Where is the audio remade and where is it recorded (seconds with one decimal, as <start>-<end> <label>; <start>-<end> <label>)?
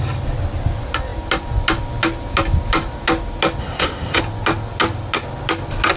0.0-3.6 recorded; 3.6-4.2 remade; 4.2-6.0 recorded